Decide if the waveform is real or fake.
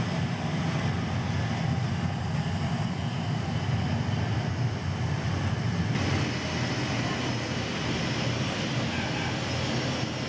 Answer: real